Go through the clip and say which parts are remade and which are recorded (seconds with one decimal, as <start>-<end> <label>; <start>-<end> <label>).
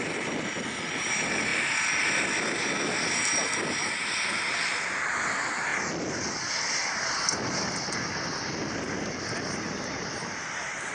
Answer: 0.0-10.9 recorded